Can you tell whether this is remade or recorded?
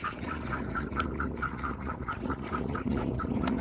remade